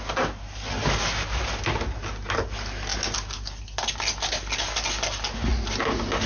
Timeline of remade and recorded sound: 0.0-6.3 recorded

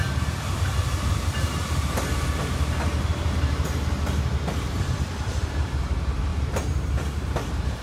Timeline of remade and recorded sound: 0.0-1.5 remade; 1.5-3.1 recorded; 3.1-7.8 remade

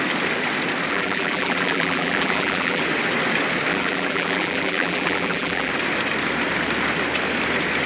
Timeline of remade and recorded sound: 0.0-0.9 recorded; 0.9-2.8 remade; 2.8-3.7 recorded; 3.7-5.7 remade; 5.7-7.9 recorded

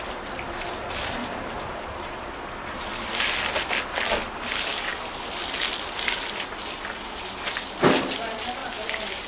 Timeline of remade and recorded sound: 0.0-1.2 recorded; 1.2-2.1 remade; 2.1-8.6 recorded; 8.6-9.3 remade